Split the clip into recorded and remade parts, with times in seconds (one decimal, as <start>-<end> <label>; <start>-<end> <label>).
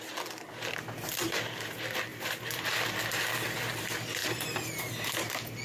0.0-4.2 recorded; 4.2-4.9 remade; 4.9-5.6 recorded